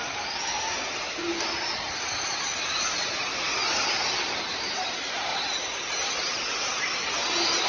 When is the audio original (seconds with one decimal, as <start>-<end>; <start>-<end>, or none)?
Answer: 0.0-7.7

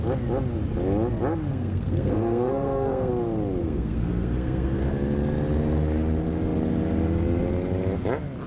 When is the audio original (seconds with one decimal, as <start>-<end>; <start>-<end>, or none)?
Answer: 0.0-1.5; 3.1-3.6; 4.9-8.5

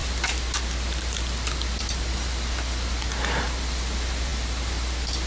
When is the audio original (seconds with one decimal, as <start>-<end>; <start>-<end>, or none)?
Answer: 0.0-5.3